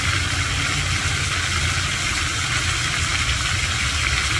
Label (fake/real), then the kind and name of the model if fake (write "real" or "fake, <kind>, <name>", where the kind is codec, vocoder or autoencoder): real